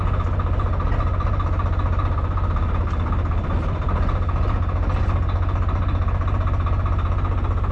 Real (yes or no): yes